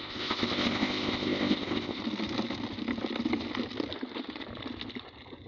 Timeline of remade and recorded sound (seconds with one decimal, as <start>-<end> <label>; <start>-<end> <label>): 0.0-2.0 remade; 2.0-5.5 recorded